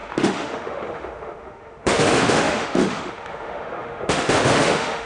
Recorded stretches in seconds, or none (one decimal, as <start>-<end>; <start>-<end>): none